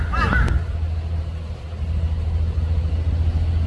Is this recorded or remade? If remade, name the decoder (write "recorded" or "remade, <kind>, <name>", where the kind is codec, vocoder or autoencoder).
recorded